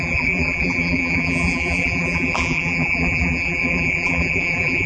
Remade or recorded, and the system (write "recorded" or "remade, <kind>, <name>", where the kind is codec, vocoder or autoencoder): remade, vocoder, BigVGAN v2